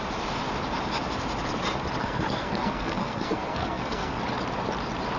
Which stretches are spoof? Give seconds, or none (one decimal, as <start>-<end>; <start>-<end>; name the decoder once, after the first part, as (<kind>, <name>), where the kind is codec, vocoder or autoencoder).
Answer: 2.0-4.2 (codec, SNAC)